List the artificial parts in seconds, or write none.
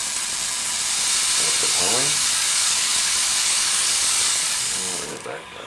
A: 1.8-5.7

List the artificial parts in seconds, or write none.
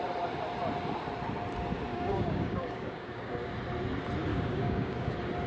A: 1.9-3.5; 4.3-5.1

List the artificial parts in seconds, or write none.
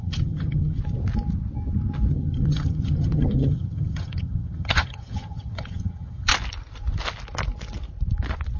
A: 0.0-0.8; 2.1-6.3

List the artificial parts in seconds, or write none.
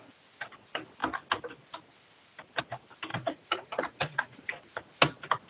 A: 3.1-4.4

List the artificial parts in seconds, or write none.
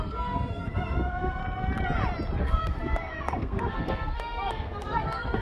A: 0.0-1.4; 2.4-5.4